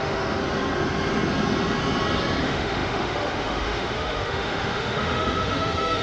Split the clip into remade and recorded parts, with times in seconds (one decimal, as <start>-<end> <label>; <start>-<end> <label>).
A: 0.0-0.4 remade; 0.4-2.4 recorded; 2.4-6.0 remade